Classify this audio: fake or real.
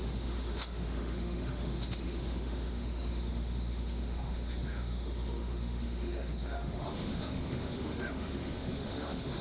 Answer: fake